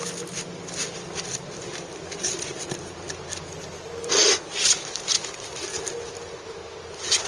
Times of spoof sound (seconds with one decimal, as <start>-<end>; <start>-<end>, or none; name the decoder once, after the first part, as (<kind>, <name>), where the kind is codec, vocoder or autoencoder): none